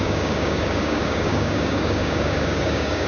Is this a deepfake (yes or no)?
yes